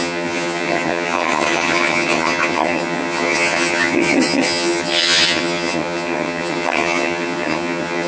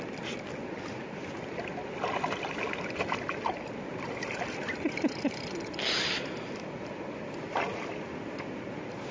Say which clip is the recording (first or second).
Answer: second